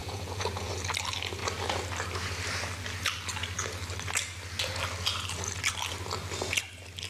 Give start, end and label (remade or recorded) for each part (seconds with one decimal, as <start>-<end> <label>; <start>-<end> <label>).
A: 0.0-0.7 remade; 0.7-7.1 recorded